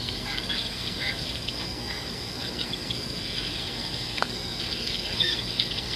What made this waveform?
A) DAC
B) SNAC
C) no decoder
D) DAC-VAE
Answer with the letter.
B